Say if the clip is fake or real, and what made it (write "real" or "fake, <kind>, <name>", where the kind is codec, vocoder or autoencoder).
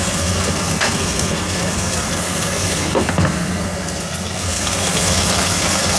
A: fake, codec, SNAC